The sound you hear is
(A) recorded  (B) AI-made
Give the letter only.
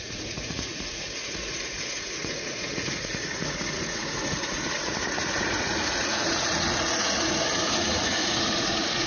B